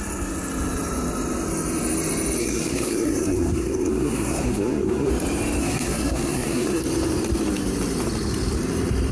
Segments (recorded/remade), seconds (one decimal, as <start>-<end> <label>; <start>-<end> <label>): 0.0-2.4 recorded; 2.4-5.1 remade; 5.1-5.6 recorded; 5.6-6.8 remade; 6.8-9.1 recorded